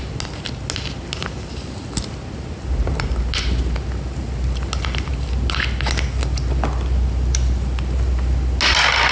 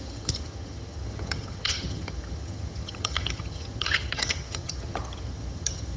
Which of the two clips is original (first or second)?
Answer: first